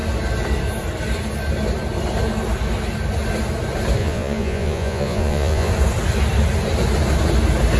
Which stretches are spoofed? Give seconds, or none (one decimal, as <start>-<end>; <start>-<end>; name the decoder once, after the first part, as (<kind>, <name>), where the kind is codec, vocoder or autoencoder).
4.0-5.7 (vocoder, Vocos)